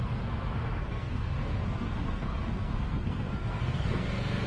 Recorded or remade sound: remade